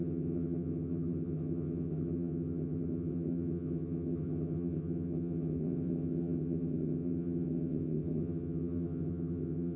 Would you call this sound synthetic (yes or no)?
yes